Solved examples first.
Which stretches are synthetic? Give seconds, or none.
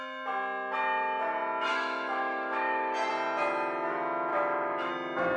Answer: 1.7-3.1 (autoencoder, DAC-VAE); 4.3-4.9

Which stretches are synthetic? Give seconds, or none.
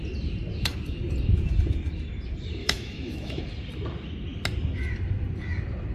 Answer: 2.6-3.4 (autoencoder, DAC-VAE)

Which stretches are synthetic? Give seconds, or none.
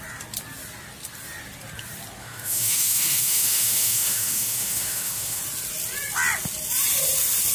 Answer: 2.2-5.4 (autoencoder, DAC-VAE)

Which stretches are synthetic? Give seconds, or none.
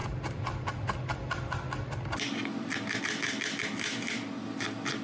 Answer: none